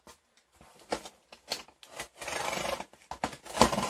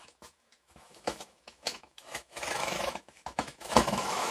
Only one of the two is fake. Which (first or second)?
second